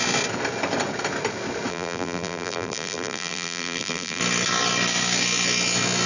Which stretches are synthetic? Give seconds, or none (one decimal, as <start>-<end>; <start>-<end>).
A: 1.7-4.2